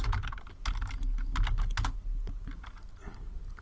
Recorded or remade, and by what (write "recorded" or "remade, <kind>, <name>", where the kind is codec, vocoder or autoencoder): recorded